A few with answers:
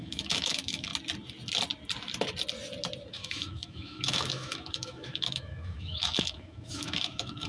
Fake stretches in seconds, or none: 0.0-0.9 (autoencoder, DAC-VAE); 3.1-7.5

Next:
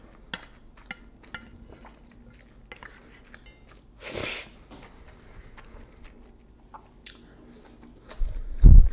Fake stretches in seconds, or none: none

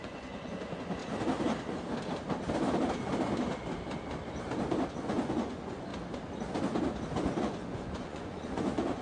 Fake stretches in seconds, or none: 0.0-1.0 (vocoder, Vocos); 4.9-5.9; 7.4-9.0

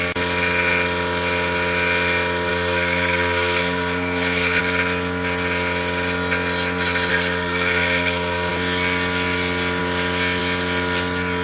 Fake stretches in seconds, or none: 2.5-4.6 (codec, SNAC); 7.1-8.5

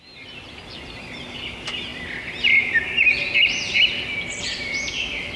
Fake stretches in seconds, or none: none